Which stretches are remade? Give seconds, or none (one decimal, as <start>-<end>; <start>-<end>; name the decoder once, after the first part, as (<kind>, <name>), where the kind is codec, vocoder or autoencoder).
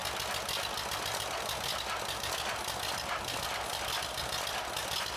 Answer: none